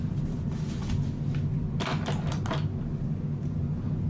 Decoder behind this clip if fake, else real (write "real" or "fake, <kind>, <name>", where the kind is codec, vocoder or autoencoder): real